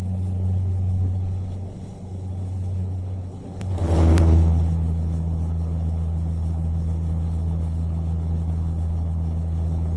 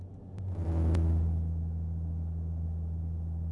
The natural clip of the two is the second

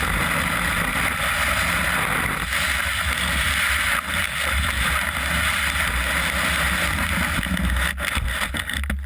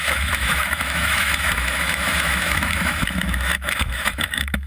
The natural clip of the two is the first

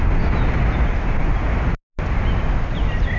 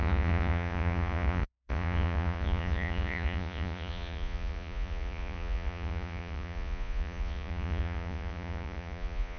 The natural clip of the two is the first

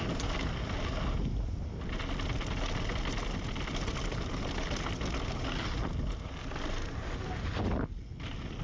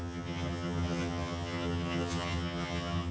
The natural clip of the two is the first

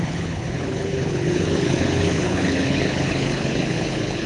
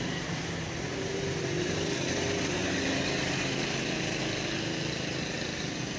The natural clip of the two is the second